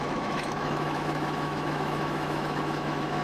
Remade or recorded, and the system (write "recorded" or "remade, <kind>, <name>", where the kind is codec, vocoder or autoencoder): remade, autoencoder, DAC-VAE